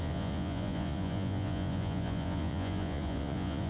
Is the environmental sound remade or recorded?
remade